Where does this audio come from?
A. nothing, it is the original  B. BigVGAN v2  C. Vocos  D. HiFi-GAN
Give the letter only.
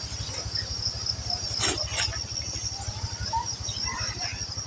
A